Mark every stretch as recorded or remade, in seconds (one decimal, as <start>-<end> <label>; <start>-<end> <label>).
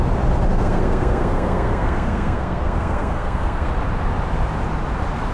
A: 0.0-0.5 recorded; 0.5-3.7 remade; 3.7-5.3 recorded